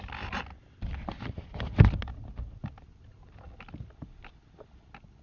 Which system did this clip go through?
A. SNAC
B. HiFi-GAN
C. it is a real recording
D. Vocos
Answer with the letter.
C